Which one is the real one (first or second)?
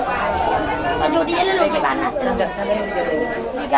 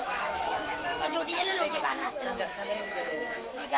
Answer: first